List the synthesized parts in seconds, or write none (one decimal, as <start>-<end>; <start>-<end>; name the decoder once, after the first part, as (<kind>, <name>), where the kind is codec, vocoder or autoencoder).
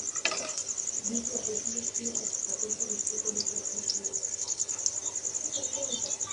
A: 1.7-2.3 (codec, HILCodec); 3.7-4.8